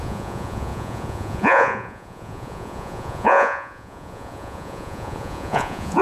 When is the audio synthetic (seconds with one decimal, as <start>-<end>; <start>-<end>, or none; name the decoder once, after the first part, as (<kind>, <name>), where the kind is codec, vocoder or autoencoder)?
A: 0.0-6.0 (vocoder, Vocos)